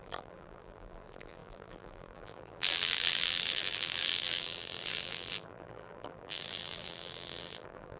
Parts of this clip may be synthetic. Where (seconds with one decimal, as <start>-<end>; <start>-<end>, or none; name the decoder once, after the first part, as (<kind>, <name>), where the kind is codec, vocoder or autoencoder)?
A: 0.0-8.0 (vocoder, BigVGAN v2)